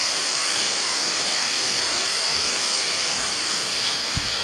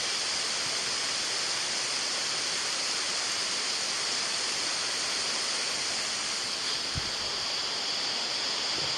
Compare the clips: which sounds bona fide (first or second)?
second